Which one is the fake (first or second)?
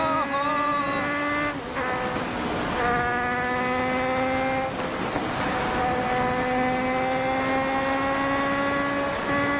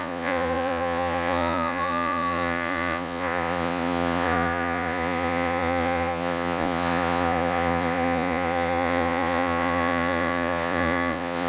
second